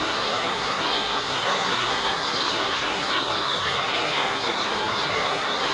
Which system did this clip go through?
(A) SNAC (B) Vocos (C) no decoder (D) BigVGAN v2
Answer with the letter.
A